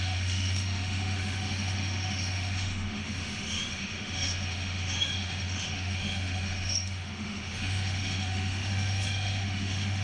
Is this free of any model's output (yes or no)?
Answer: no